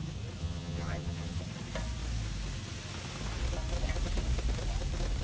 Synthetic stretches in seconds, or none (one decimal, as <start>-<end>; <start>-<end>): 0.4-1.4